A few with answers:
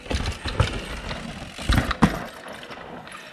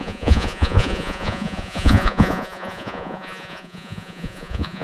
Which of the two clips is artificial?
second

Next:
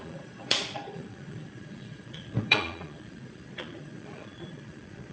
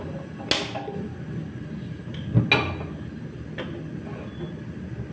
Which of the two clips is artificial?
first